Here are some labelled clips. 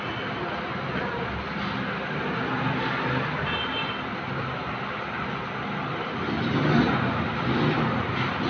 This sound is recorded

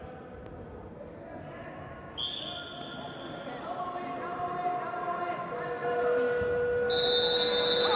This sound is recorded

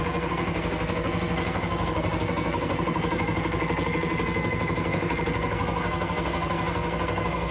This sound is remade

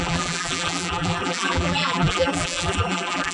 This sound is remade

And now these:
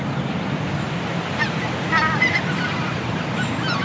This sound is recorded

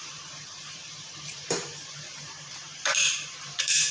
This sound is remade